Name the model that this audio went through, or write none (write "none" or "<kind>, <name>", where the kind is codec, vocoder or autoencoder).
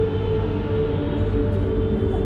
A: none